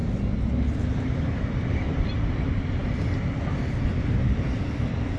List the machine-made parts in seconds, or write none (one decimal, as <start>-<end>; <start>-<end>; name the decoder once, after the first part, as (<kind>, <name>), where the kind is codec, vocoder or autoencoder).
none